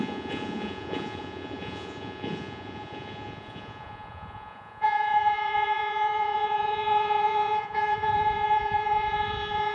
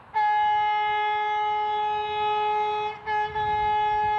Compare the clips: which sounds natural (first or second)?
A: second